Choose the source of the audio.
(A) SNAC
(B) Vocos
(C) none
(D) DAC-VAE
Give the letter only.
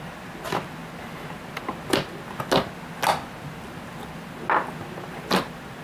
C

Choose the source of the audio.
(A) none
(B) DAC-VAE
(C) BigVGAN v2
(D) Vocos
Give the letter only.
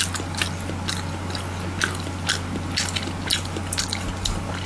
A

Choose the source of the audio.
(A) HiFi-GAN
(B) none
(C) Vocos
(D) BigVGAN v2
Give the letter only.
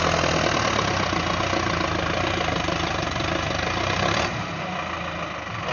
B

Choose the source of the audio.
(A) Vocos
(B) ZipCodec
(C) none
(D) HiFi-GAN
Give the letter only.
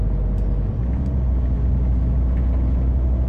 C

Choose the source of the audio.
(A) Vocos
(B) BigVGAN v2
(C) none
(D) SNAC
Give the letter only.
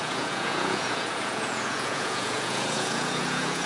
A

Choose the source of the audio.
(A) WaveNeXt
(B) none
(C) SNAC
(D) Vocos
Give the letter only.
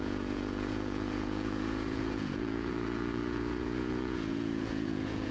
D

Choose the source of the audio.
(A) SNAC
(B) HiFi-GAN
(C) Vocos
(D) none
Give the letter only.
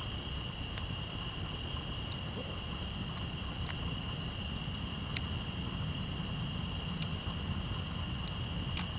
D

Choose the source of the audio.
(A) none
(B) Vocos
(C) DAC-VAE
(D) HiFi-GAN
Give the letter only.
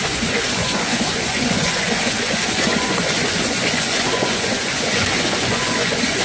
B